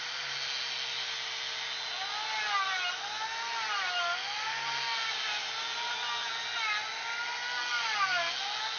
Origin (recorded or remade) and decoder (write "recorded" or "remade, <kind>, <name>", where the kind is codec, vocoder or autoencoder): recorded